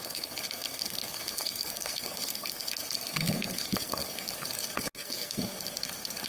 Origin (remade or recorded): remade